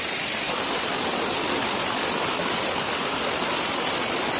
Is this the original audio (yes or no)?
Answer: yes